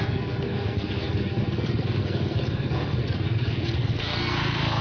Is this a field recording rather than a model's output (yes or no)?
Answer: no